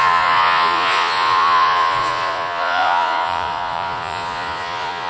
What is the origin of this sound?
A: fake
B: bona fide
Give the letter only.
A